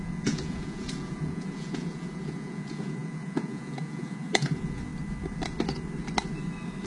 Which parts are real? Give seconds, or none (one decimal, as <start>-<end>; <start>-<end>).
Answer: 4.9-6.9